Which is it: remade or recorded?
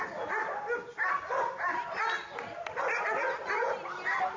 recorded